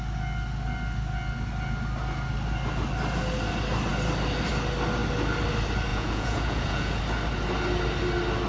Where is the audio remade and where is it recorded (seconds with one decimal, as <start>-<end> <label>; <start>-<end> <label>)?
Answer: 0.0-5.9 recorded; 5.9-7.0 remade; 7.0-8.5 recorded